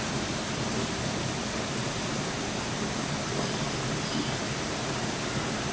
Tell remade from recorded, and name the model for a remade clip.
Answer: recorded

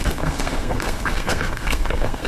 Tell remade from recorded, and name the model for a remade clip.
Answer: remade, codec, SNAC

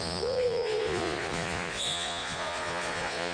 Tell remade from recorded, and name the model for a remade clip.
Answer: remade, vocoder, Vocos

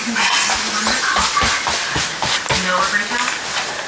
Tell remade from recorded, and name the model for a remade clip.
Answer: recorded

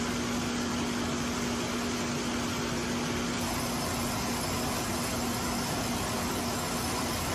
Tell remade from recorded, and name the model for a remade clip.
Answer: recorded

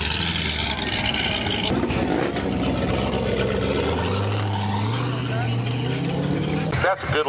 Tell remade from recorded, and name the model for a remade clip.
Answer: recorded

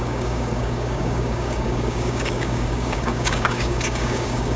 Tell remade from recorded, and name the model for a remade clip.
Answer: remade, codec, DAC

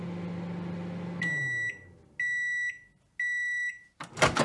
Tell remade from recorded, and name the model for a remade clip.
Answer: recorded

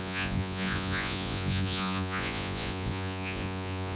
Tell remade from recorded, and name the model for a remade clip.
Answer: remade, vocoder, Vocos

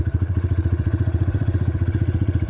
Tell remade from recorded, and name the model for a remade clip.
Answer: remade, vocoder, Vocos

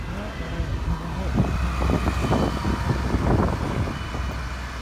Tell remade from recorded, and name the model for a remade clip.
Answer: recorded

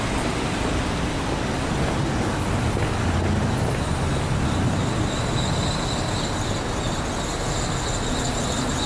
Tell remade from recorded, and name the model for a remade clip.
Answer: recorded